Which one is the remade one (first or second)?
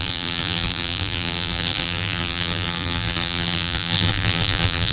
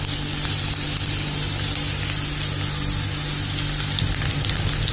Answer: first